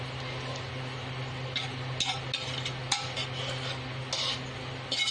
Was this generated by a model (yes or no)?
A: no